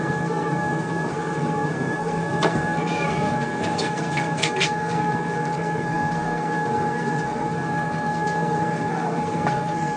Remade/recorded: remade